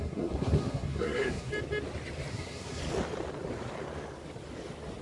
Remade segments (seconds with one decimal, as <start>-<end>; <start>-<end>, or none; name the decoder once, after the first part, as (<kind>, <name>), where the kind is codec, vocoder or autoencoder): 0.0-1.5 (codec, SNAC); 2.3-2.8